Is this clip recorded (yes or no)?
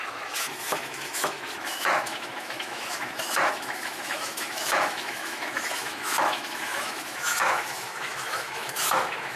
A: no